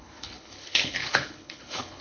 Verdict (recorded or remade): remade